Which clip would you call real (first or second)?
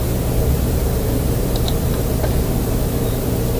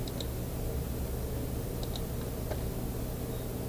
second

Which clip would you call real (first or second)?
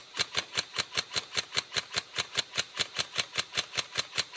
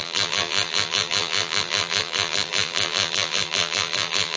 first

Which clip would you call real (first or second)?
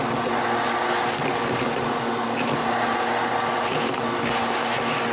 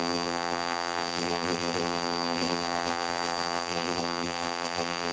first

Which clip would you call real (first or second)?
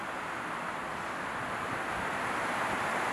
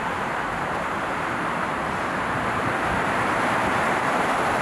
first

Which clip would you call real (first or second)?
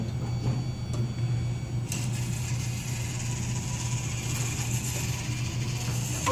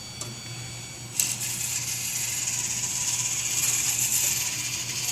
first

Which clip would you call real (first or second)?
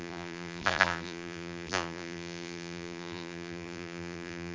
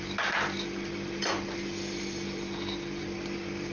second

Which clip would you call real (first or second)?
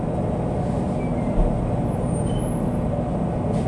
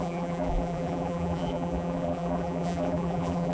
first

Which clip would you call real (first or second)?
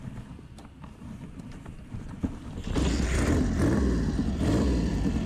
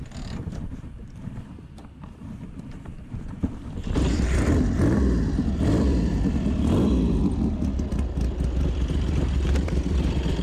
first